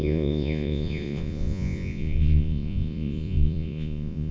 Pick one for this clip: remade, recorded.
remade